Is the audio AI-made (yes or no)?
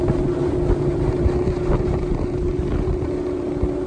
no